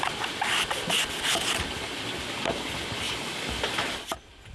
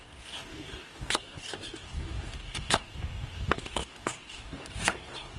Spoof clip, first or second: second